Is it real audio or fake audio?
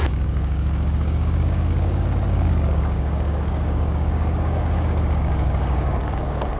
fake